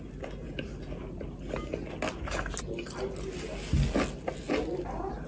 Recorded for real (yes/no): yes